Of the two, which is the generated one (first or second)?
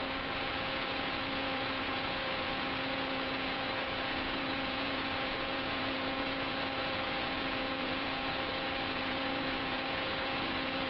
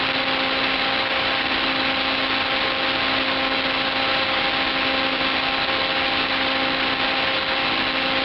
first